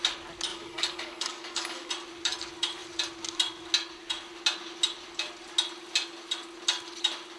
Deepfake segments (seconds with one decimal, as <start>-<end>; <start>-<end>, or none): 0.5-1.9